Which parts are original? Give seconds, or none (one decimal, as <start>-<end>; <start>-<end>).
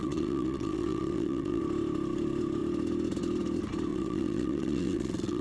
1.6-3.9